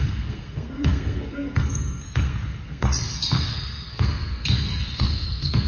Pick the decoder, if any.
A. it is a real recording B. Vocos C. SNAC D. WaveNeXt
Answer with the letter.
C